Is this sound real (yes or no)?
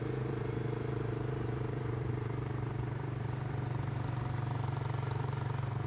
no